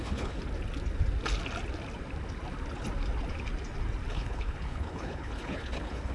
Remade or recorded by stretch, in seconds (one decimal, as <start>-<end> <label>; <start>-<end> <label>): 0.0-0.4 remade; 0.4-4.1 recorded; 4.1-6.1 remade